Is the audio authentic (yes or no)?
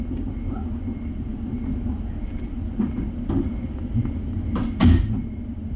yes